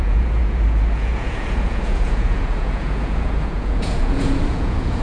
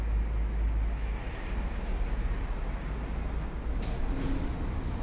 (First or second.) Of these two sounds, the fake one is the first